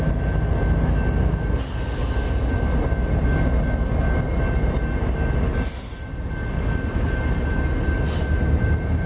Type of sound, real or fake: real